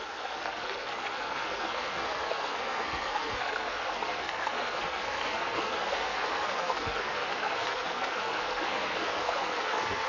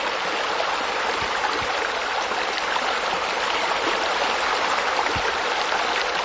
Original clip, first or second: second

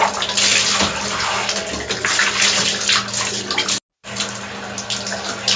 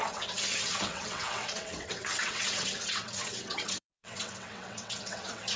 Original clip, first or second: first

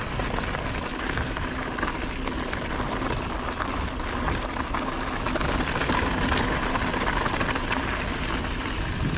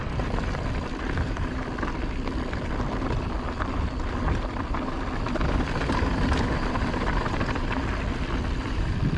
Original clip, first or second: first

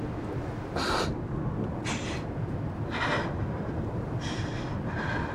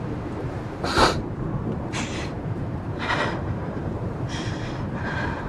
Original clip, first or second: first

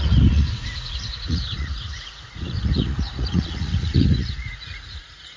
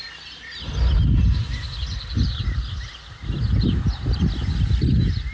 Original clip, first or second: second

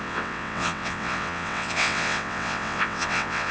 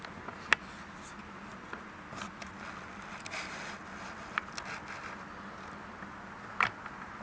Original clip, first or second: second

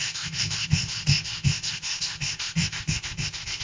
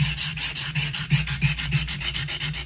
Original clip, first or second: second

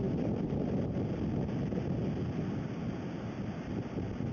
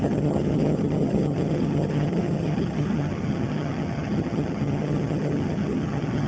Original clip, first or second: first